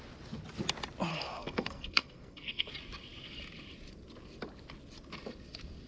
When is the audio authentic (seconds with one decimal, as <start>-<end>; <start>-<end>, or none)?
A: 0.0-1.1; 2.7-5.9